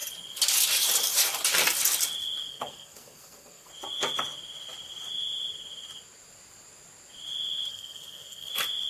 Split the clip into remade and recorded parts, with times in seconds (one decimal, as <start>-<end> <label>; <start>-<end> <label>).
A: 0.0-2.5 recorded; 2.5-3.7 remade; 3.7-7.7 recorded; 7.7-8.5 remade; 8.5-8.9 recorded